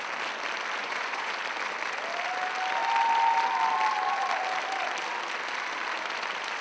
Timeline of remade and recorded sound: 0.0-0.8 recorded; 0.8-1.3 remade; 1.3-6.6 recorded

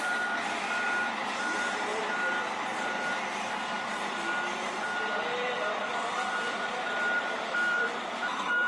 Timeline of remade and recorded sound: 0.0-1.9 remade; 1.9-6.1 recorded; 6.1-8.7 remade

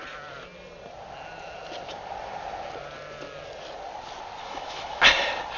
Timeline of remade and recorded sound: 0.0-4.4 recorded; 4.4-5.0 remade; 5.0-5.6 recorded

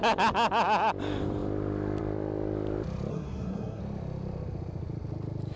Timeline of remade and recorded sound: 0.0-3.1 recorded; 3.1-3.8 remade; 3.8-5.6 recorded

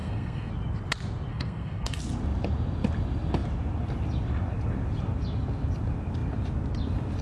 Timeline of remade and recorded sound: 0.0-0.5 remade; 0.5-1.3 recorded; 1.3-2.0 remade; 2.0-7.2 recorded

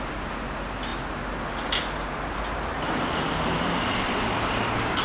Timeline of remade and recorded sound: 0.0-5.0 recorded